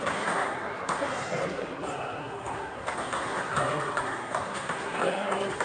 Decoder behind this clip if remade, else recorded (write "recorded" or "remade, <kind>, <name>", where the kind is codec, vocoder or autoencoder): remade, codec, SNAC